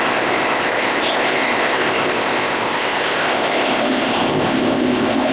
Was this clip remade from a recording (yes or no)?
yes